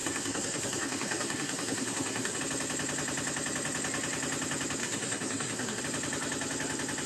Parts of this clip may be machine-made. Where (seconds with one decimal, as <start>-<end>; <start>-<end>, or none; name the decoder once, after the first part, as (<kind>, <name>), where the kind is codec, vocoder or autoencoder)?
0.0-2.4 (codec, SNAC); 4.8-5.8